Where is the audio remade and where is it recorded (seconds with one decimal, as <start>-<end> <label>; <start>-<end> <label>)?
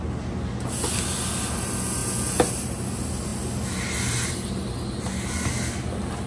0.0-6.3 recorded